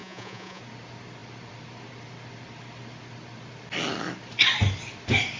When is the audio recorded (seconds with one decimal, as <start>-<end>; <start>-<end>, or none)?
0.6-5.4